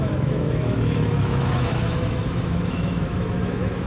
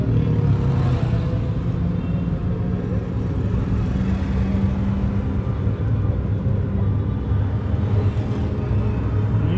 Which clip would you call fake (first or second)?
first